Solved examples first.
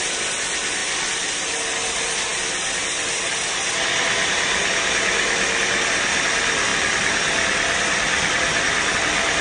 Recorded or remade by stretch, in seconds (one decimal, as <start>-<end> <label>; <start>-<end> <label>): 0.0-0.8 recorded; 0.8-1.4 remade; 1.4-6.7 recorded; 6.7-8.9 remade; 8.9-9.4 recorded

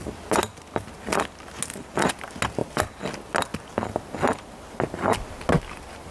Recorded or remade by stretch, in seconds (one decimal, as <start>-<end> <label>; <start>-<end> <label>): 0.0-6.1 recorded

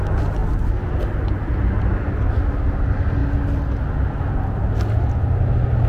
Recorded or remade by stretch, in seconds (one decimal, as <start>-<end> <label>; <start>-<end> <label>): 0.0-5.9 recorded